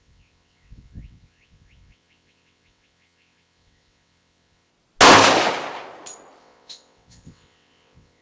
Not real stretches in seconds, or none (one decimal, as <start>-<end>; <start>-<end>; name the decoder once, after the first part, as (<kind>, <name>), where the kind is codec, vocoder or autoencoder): 0.0-4.7 (vocoder, WaveNeXt); 6.4-8.2